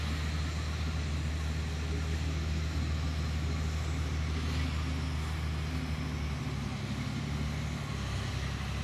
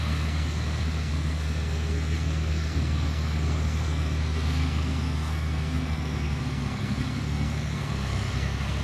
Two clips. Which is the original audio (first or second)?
first